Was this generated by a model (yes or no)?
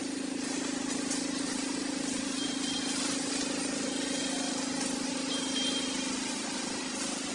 no